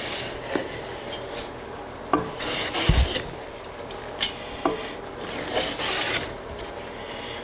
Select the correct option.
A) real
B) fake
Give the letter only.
A